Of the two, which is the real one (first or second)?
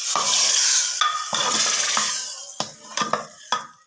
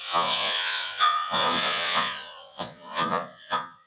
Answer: first